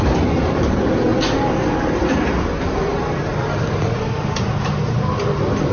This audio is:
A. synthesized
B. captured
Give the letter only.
B